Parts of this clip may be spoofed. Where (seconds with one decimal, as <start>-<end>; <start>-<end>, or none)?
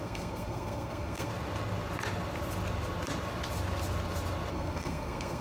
0.0-1.3; 4.5-5.4